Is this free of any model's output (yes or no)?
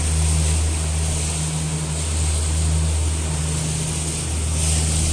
yes